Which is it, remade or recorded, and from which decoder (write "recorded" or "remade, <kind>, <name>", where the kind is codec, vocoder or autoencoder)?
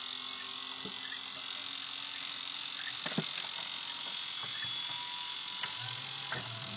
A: recorded